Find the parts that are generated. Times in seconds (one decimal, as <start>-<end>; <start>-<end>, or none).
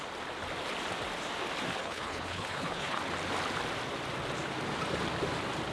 1.8-3.0